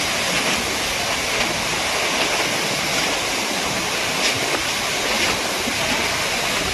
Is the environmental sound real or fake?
real